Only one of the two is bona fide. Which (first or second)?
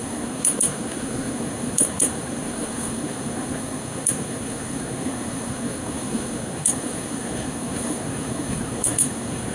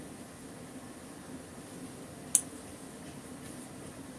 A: second